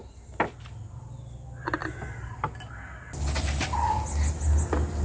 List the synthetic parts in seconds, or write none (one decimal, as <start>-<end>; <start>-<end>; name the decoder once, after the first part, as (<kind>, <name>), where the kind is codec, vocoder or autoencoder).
none